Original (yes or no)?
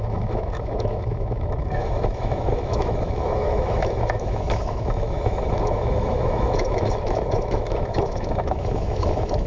no